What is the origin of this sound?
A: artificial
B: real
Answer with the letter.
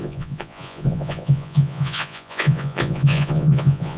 A